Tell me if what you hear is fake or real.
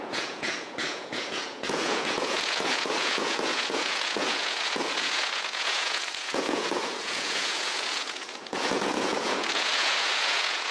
fake